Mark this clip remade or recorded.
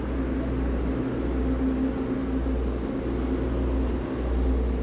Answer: recorded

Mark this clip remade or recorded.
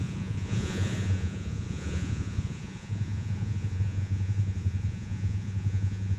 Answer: remade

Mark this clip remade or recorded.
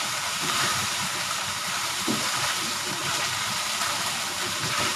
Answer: remade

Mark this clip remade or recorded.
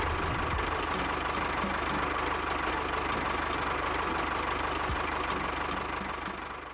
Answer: recorded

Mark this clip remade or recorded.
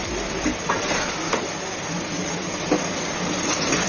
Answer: recorded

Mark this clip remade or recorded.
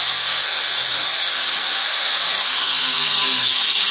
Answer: remade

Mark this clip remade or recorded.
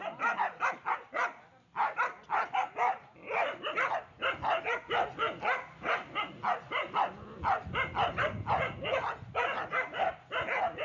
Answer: remade